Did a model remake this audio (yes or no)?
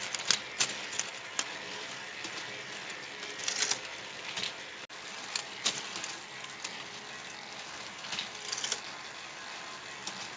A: no